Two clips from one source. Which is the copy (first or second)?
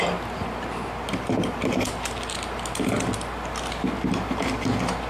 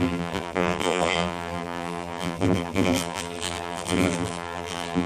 second